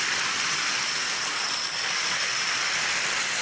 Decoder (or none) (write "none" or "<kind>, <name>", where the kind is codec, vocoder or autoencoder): none